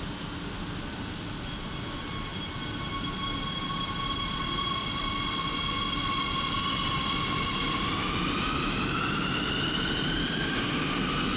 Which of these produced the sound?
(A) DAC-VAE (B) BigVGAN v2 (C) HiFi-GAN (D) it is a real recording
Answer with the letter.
B